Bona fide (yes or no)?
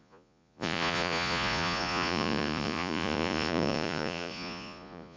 no